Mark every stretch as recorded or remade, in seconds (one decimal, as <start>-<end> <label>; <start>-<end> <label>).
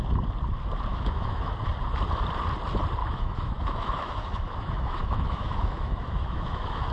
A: 0.0-0.9 recorded; 0.9-1.5 remade; 1.5-3.0 recorded; 3.0-6.9 remade